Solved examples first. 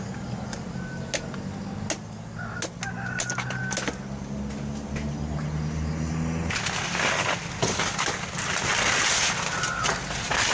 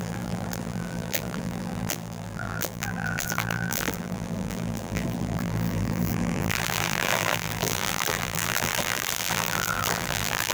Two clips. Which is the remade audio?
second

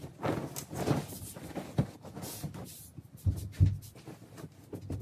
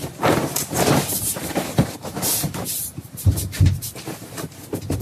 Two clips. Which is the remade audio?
second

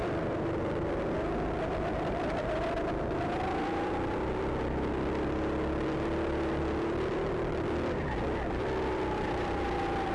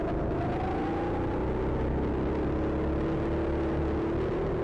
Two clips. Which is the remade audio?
first